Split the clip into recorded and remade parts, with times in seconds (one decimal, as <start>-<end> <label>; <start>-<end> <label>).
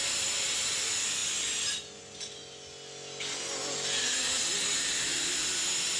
0.0-6.0 recorded